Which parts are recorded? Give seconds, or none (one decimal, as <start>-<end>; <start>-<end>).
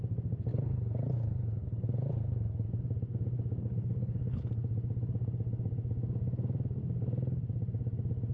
0.0-0.5; 2.7-3.6; 4.4-8.3